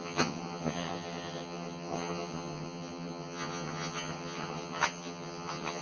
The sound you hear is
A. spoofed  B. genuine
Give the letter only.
A